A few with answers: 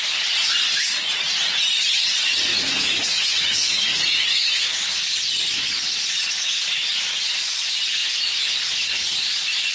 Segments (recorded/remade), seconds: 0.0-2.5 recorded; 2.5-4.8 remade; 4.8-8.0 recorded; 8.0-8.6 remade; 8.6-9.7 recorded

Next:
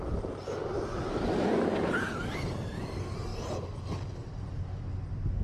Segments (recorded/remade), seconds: 0.0-5.4 recorded

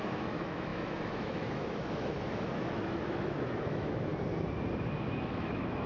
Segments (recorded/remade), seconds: 0.0-4.1 remade; 4.1-5.0 recorded; 5.0-5.9 remade